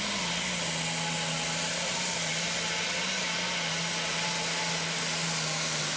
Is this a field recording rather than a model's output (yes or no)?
yes